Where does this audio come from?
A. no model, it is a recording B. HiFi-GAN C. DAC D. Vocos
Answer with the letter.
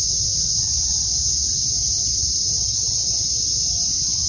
A